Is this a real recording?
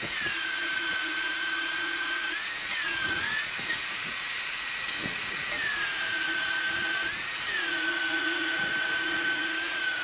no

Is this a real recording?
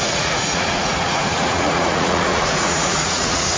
no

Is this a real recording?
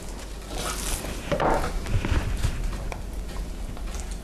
yes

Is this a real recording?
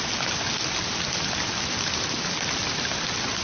yes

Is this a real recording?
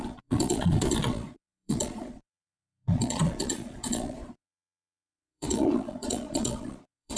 no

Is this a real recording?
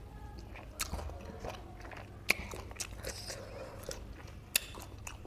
yes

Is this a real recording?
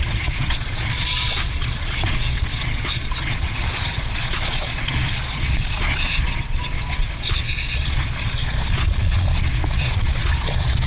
no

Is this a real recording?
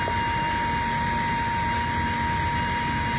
yes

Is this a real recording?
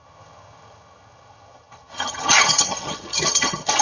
no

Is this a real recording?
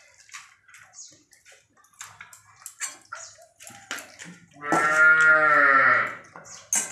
yes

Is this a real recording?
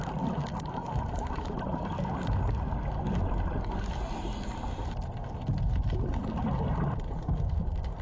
yes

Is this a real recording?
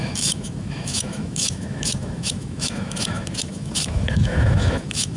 no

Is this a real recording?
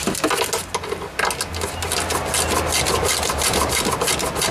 yes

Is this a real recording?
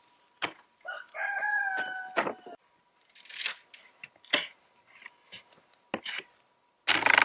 yes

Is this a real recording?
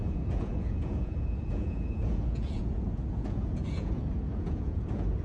no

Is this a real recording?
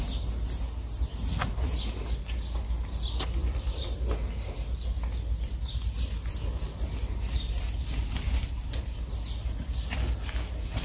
yes